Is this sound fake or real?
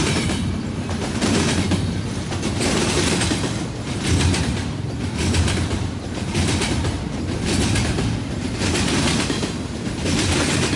fake